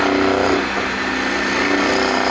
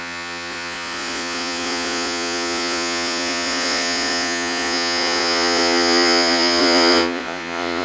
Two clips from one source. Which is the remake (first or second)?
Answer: second